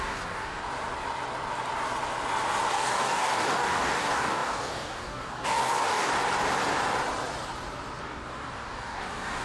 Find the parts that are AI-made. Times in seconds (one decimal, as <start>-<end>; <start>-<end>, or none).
0.0-0.6; 2.7-6.1; 8.0-9.4